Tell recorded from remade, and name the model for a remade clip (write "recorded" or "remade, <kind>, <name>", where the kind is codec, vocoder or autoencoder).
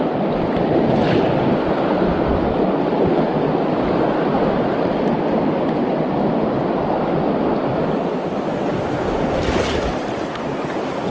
recorded